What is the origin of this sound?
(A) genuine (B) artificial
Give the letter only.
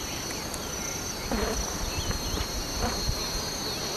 A